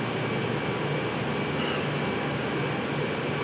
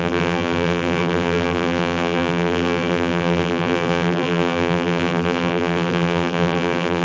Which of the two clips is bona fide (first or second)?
first